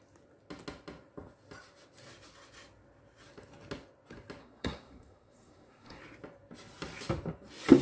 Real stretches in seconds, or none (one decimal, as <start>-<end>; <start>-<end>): 0.0-4.4; 6.0-7.8